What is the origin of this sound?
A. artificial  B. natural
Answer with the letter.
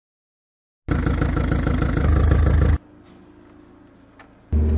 B